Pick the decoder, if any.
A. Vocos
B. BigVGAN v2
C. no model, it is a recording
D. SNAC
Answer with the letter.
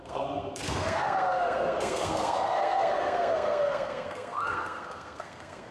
D